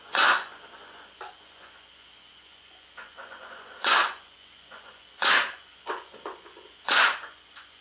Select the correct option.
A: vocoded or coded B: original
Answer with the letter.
A